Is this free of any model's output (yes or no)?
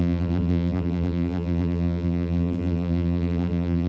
no